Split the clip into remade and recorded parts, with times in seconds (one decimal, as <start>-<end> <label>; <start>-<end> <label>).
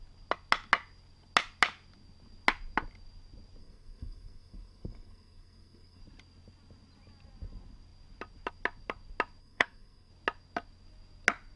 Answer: 0.0-3.6 recorded; 3.6-6.0 remade; 6.0-9.4 recorded; 9.4-10.1 remade; 10.1-11.6 recorded